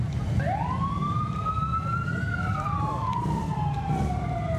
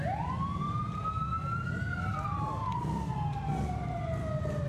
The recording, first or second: second